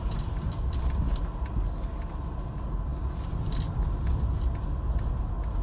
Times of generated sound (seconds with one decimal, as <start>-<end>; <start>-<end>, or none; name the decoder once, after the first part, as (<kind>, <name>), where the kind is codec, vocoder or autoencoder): none